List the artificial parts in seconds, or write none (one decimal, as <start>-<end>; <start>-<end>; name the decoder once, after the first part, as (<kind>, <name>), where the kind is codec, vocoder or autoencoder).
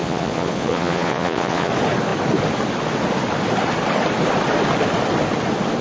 0.0-1.7 (vocoder, Vocos)